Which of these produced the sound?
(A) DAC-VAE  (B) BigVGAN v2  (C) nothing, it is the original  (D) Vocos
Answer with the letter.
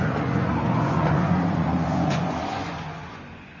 D